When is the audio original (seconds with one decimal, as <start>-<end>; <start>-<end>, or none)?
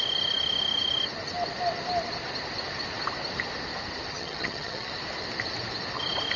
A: 0.0-4.1; 4.9-6.4